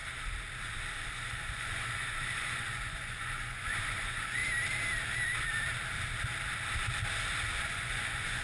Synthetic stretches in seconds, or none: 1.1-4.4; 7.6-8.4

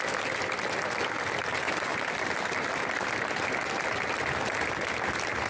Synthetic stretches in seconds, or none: none

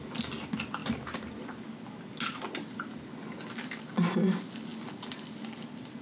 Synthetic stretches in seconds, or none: none

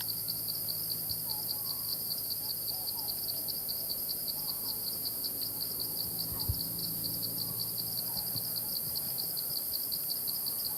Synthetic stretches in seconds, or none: 1.9-5.3; 6.8-7.3

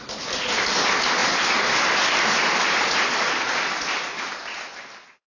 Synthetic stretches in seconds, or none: none

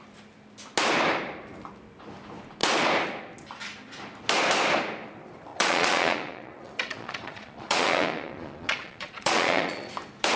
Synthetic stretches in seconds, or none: 5.5-9.9

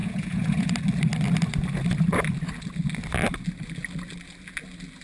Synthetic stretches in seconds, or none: 0.0-0.7

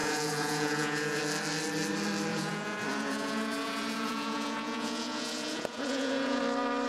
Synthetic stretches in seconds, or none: 0.0-1.2; 2.3-6.4